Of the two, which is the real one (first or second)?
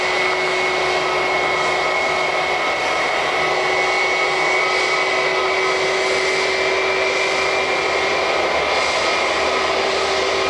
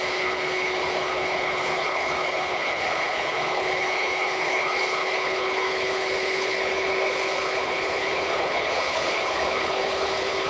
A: first